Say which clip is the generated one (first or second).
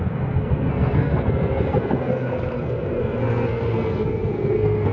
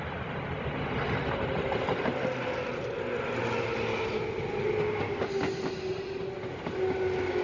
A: first